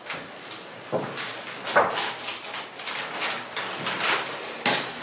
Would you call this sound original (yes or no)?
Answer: yes